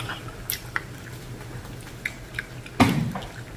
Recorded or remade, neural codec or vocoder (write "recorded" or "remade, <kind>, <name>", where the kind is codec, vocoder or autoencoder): recorded